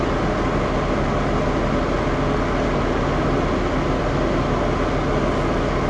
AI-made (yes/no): no